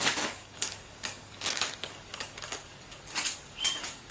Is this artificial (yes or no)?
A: yes